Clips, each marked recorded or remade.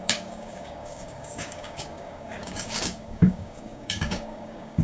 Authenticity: remade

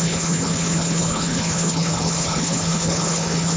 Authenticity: remade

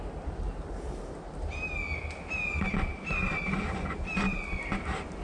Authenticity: recorded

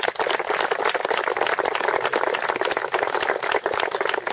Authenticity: recorded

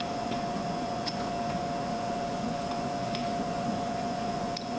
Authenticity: remade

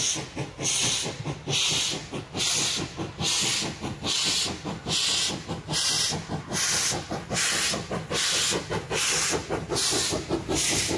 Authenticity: recorded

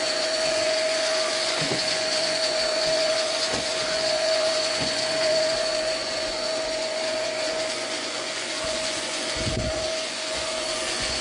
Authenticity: remade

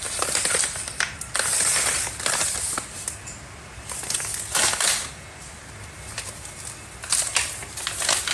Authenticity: recorded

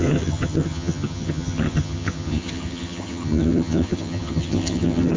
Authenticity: remade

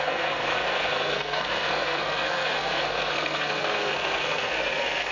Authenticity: remade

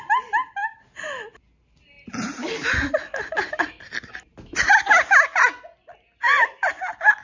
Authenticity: recorded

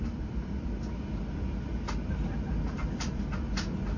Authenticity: recorded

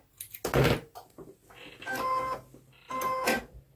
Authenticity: recorded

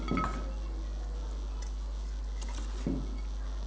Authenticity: recorded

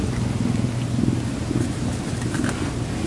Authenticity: recorded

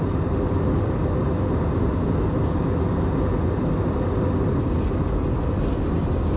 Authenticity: recorded